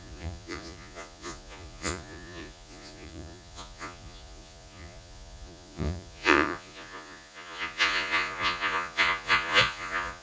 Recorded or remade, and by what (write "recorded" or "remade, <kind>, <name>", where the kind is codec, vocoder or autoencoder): remade, vocoder, Vocos